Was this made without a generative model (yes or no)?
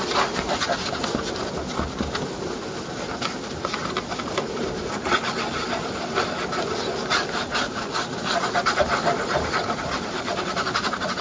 yes